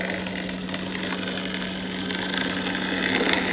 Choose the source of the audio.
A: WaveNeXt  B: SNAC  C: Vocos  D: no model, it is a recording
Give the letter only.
D